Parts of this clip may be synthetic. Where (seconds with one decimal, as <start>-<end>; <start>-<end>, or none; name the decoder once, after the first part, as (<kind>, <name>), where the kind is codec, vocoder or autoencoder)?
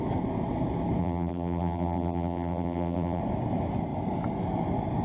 1.0-3.2 (vocoder, BigVGAN v2)